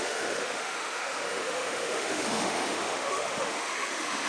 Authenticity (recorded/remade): remade